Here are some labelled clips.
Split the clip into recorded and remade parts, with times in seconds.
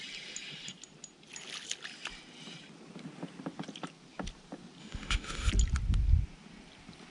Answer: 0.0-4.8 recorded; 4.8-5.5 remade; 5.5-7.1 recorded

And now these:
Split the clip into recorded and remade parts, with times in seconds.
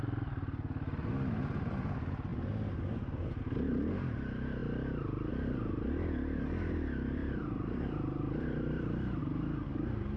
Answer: 0.0-7.2 recorded; 7.2-9.2 remade; 9.2-10.2 recorded